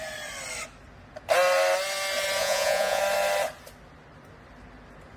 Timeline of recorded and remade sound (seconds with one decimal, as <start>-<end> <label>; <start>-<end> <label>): 0.0-2.4 recorded; 2.4-3.0 remade; 3.0-5.2 recorded